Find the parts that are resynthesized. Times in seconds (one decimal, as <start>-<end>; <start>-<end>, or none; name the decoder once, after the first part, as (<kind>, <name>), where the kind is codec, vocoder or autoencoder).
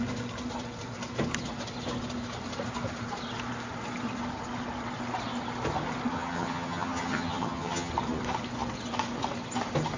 6.1-7.9 (vocoder, HiFi-GAN)